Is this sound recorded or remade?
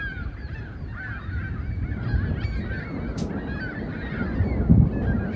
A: recorded